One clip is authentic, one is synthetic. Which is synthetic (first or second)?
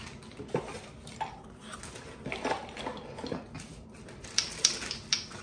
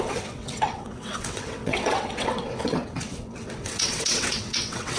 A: second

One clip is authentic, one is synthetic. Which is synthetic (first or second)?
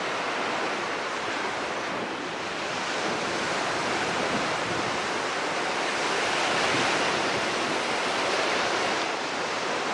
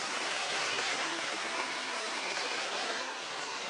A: second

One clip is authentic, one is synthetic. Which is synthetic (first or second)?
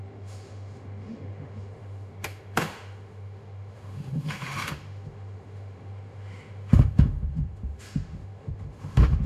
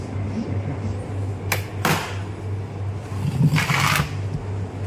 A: first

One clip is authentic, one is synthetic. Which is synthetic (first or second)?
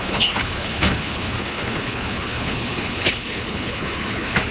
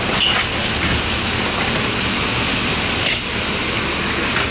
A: first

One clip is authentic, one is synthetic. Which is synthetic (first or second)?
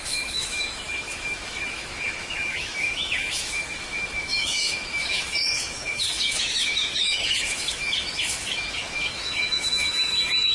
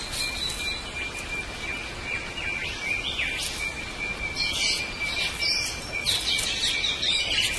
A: first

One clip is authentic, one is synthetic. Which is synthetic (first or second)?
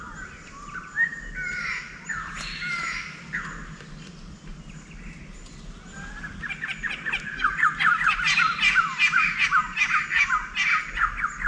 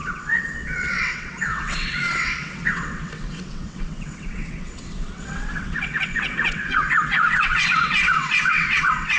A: second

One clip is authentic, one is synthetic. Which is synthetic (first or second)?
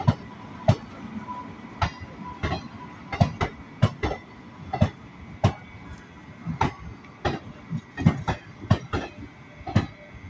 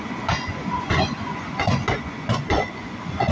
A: second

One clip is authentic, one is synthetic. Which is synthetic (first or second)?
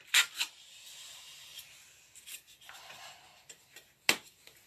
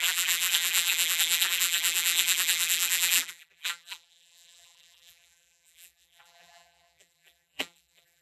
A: second